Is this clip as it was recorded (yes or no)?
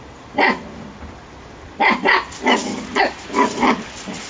yes